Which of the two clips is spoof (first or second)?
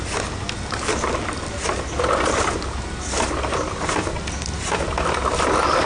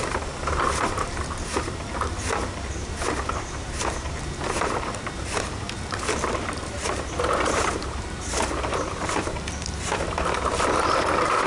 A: second